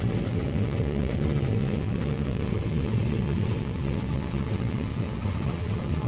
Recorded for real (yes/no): no